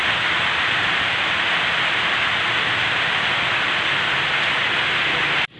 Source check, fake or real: real